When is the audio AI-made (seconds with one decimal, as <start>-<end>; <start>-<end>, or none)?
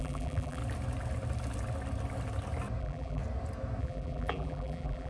0.0-0.6; 2.8-3.2; 3.8-5.1